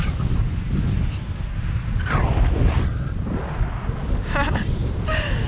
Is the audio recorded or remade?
recorded